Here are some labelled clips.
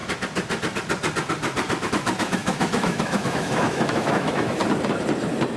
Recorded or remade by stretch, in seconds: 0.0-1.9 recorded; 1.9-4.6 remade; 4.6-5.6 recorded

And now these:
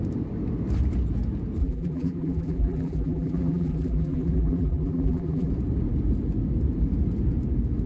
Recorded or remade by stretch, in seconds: 0.0-1.6 recorded; 1.6-5.5 remade; 5.5-7.9 recorded

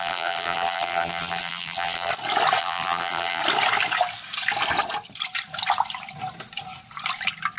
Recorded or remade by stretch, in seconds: 0.0-2.1 remade; 2.1-2.6 recorded; 2.6-3.4 remade; 3.4-7.6 recorded

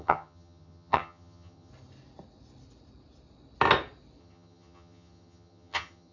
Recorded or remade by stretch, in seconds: 0.0-1.7 remade; 1.7-4.2 recorded; 4.2-6.1 remade

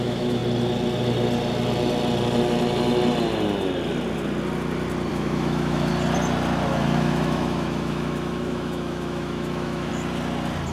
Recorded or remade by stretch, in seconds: 0.0-0.4 remade; 0.4-5.1 recorded; 5.1-5.9 remade; 5.9-6.7 recorded; 6.7-9.9 remade; 9.9-10.7 recorded

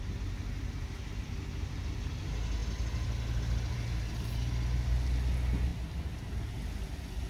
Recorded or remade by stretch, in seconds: 0.0-7.3 recorded